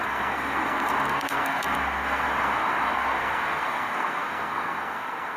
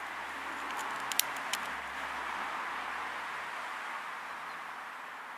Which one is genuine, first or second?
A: second